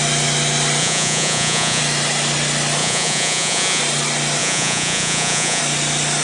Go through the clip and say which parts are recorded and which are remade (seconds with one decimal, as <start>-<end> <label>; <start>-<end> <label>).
0.0-0.8 recorded; 0.8-1.8 remade; 1.8-2.8 recorded; 2.8-3.8 remade; 3.8-4.4 recorded; 4.4-5.6 remade; 5.6-6.2 recorded